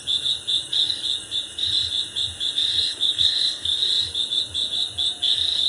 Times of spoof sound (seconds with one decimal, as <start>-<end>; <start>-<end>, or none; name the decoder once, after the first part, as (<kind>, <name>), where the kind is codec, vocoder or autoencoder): 2.7-3.8 (codec, SNAC)